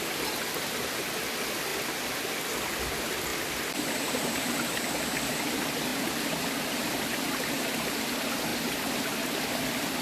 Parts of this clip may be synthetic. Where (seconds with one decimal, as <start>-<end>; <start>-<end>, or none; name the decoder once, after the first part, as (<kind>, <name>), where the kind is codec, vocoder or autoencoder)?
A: 1.7-2.5 (vocoder, BigVGAN v2); 3.3-4.3